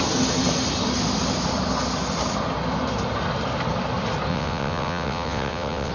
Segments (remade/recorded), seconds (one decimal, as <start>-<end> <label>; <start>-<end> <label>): 0.0-4.3 recorded; 4.3-5.9 remade

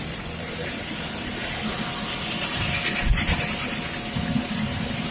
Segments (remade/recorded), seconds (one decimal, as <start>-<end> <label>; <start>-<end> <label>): 0.0-1.4 remade; 1.4-4.5 recorded; 4.5-5.1 remade

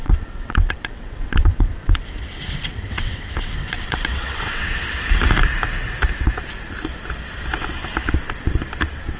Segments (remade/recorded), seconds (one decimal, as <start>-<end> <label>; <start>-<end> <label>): 0.0-5.0 remade; 5.0-9.2 recorded

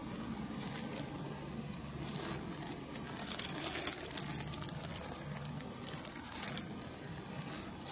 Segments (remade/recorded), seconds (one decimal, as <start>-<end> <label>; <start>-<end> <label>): 0.0-7.9 recorded

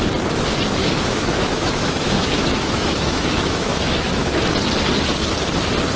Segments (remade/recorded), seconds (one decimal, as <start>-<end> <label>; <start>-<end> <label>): 0.0-0.8 recorded; 0.8-4.4 remade; 4.4-6.0 recorded

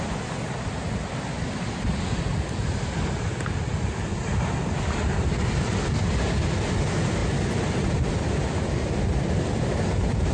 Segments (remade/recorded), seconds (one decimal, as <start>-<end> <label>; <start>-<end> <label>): 0.0-10.3 recorded

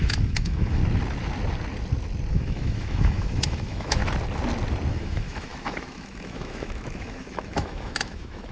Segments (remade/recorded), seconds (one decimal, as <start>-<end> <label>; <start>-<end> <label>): 0.0-0.8 remade; 0.8-2.3 recorded; 2.3-4.0 remade; 4.0-4.9 recorded; 4.9-8.5 remade